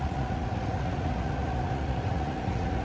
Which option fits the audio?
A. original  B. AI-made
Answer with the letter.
B